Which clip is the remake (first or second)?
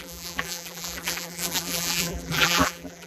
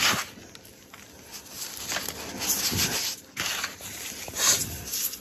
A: first